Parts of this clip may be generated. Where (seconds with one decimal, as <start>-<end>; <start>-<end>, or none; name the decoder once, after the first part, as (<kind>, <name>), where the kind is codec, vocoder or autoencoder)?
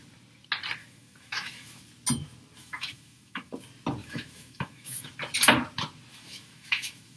0.8-1.8 (autoencoder, DAC-VAE); 2.6-3.5; 4.0-5.1; 6.1-7.2